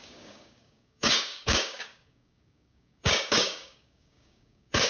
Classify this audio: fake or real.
fake